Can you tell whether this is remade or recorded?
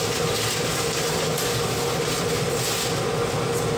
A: recorded